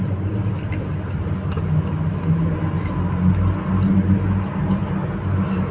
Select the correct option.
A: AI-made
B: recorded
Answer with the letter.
B